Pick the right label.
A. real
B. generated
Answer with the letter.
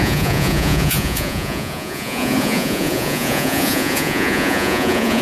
B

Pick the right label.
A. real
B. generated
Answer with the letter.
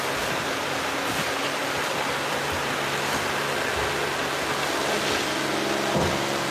A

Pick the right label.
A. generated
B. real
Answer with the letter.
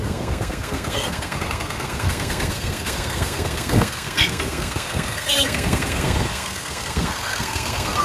A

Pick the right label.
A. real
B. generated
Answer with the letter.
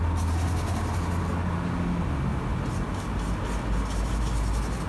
A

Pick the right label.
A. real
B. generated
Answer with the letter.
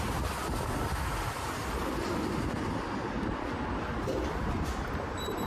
B